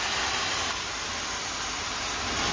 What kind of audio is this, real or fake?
real